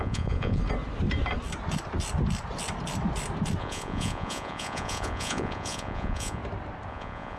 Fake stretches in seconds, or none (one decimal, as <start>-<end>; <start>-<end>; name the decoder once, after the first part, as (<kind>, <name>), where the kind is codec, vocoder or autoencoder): 0.0-0.6 (vocoder, Vocos); 3.6-6.4; 6.9-7.4